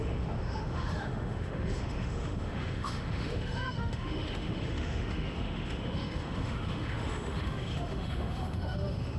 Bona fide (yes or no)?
no